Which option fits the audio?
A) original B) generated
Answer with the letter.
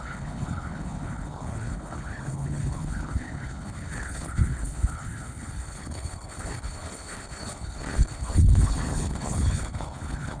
B